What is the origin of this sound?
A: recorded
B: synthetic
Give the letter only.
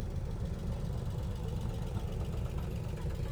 A